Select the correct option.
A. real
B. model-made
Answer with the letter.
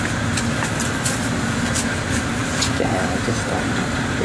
A